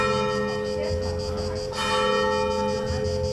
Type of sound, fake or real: real